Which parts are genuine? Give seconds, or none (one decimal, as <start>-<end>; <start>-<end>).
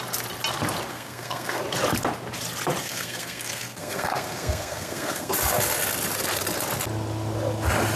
0.0-0.9; 1.6-2.8; 5.3-8.0